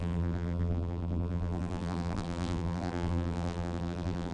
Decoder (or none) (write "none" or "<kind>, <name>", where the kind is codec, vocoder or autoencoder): vocoder, BigVGAN v2